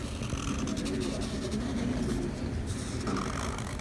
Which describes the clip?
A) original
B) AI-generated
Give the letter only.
A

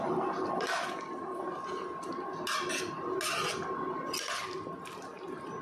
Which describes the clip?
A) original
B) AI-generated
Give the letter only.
A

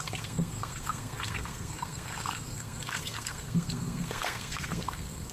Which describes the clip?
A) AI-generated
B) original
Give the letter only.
A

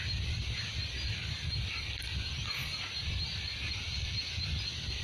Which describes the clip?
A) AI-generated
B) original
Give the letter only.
B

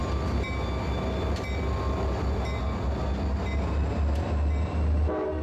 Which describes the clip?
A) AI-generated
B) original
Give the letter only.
B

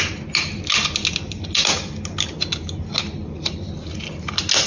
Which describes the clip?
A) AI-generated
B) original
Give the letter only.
B